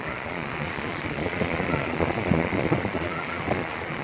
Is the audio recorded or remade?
remade